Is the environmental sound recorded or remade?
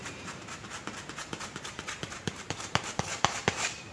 remade